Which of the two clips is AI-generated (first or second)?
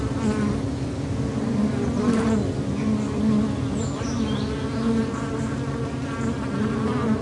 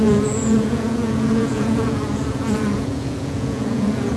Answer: second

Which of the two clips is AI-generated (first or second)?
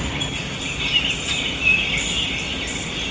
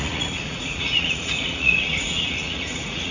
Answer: second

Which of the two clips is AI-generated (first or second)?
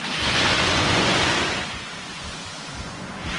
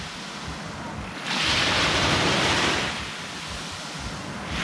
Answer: first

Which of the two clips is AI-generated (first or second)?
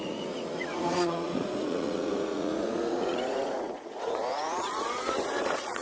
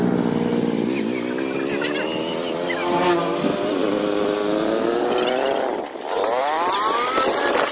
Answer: first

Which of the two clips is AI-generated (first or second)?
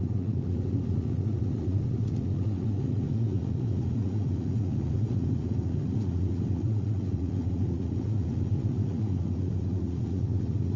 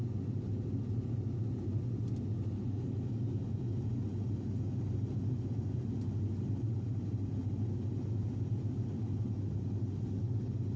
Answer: first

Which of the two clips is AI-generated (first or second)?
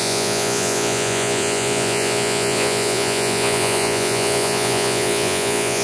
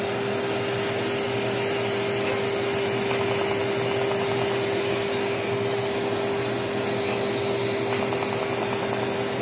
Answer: first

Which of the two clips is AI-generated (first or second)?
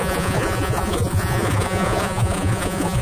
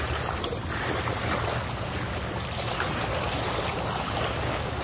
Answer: first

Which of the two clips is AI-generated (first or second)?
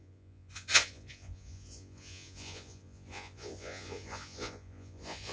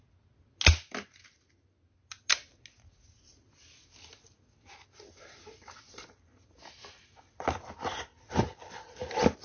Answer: first